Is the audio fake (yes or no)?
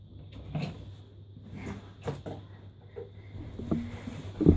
no